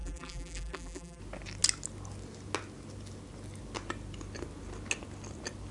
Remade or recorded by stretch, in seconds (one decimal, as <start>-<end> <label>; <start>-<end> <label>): 0.0-1.2 remade; 1.2-5.7 recorded